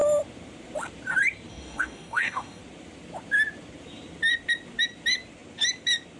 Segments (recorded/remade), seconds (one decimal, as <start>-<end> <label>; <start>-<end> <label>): 0.0-1.5 recorded; 1.5-2.6 remade; 2.6-6.2 recorded